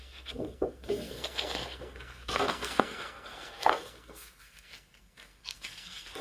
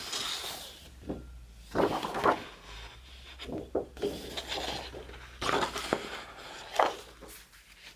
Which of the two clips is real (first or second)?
second